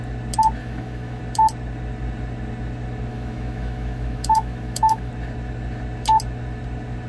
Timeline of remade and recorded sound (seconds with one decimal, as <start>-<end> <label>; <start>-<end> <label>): 0.0-0.6 recorded; 0.6-1.2 remade; 1.2-3.1 recorded; 3.1-5.1 remade; 5.1-7.1 recorded